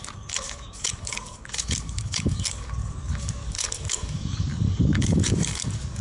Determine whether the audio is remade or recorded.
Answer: remade